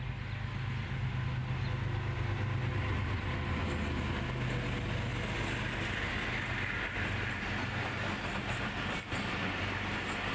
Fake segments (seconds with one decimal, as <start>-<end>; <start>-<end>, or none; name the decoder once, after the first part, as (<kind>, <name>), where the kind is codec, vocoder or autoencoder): none